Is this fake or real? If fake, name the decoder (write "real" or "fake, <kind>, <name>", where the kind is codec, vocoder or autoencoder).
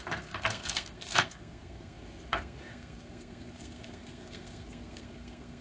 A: fake, codec, SNAC